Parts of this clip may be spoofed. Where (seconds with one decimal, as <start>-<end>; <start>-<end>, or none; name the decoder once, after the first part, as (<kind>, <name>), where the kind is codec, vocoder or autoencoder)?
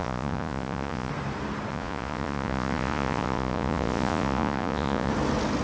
0.0-1.1 (vocoder, Vocos); 1.7-5.1